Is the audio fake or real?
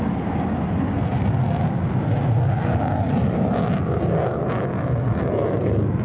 real